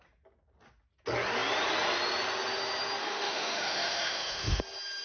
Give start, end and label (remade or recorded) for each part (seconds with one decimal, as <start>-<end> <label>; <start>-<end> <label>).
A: 0.0-3.0 recorded; 3.0-4.6 remade; 4.6-5.0 recorded